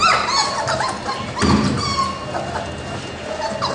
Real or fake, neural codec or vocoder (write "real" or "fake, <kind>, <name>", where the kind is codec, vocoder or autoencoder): real